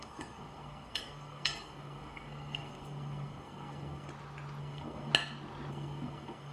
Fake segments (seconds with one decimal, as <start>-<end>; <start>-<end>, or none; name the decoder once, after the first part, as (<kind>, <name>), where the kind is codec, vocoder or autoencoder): 0.0-4.1 (codec, SNAC); 4.6-5.1; 5.7-6.5